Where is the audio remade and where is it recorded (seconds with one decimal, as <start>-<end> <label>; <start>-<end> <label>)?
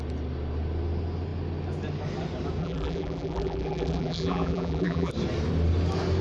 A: 0.0-2.6 recorded; 2.6-5.1 remade; 5.1-6.2 recorded